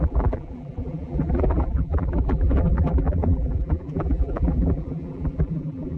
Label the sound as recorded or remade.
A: remade